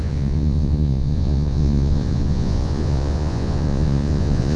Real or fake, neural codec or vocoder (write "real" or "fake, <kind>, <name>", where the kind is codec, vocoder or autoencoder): fake, vocoder, Vocos